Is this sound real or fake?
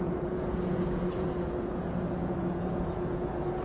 fake